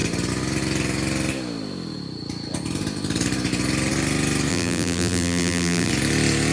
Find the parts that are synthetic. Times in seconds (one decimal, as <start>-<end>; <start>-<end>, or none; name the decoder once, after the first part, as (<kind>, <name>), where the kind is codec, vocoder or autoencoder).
4.5-5.9 (vocoder, BigVGAN v2)